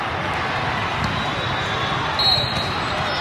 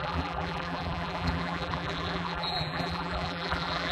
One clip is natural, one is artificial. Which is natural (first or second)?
first